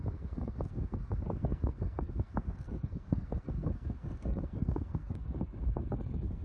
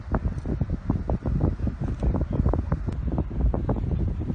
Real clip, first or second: second